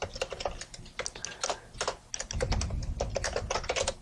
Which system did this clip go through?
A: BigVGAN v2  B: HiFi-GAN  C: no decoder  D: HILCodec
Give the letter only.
C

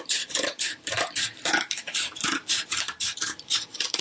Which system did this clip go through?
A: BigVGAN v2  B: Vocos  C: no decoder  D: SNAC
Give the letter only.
A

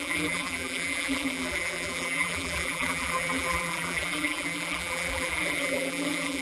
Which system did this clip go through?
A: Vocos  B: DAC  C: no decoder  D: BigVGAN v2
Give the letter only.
D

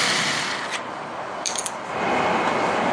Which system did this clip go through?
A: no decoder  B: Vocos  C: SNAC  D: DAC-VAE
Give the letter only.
A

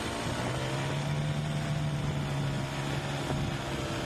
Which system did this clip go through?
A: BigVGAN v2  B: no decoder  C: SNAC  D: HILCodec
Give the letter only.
B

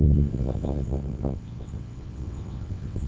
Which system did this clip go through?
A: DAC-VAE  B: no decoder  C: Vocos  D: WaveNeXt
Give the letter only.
D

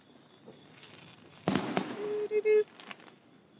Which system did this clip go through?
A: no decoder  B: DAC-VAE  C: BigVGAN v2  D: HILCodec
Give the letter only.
A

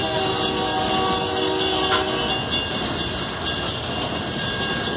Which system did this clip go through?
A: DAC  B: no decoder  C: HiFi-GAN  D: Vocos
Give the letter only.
B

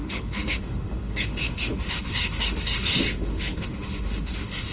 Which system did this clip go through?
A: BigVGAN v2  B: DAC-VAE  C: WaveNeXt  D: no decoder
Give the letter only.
B